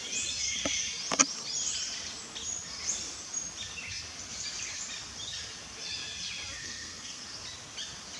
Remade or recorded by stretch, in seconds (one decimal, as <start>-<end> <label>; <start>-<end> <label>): 0.0-6.6 recorded; 6.6-7.2 remade; 7.2-8.2 recorded